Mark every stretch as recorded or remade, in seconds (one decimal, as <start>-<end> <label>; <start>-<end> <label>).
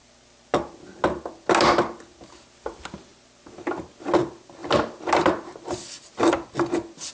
0.0-7.1 recorded